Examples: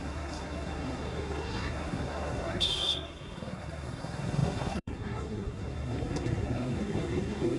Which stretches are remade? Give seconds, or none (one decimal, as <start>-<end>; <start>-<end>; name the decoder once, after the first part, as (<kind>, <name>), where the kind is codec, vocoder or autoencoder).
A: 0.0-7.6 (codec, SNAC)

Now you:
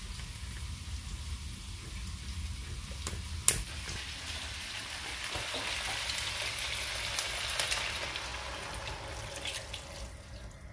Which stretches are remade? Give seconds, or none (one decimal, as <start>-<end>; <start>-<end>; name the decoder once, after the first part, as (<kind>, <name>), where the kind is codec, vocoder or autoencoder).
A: none

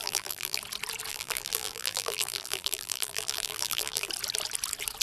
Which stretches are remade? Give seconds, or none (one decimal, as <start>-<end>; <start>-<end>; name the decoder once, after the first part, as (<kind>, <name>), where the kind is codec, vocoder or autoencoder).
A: 0.0-0.6 (vocoder, BigVGAN v2); 1.1-4.1

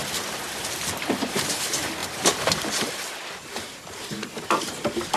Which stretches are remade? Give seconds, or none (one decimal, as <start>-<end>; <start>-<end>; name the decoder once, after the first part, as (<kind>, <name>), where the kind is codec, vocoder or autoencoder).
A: none